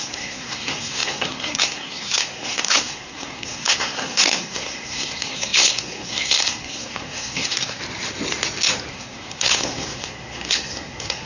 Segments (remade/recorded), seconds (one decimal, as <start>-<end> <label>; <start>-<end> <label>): 0.0-7.8 remade; 7.8-8.9 recorded; 8.9-11.3 remade